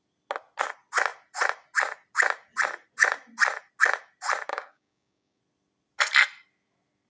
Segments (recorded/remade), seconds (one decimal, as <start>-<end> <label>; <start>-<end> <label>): 0.0-4.5 recorded; 4.5-5.4 remade; 5.4-7.1 recorded